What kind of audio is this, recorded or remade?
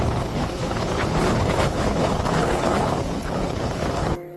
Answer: remade